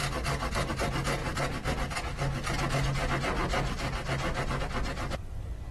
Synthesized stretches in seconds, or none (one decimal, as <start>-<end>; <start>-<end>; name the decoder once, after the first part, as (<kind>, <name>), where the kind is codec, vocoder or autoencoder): none